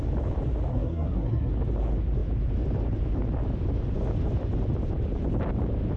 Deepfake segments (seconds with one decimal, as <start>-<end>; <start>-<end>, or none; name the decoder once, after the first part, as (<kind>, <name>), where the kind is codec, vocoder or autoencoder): 0.7-1.5 (codec, SNAC)